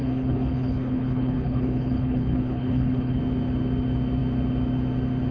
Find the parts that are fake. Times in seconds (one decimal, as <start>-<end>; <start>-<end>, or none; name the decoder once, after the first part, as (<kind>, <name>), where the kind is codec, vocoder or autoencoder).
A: 0.0-3.2 (codec, HILCodec)